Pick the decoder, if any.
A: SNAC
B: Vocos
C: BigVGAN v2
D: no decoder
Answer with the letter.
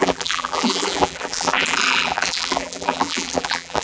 C